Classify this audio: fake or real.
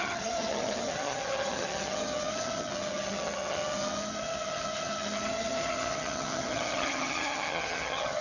fake